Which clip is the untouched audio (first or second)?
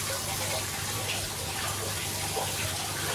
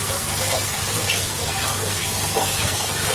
first